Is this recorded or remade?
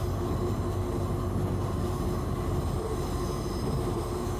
recorded